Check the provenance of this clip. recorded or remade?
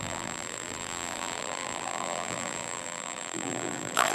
remade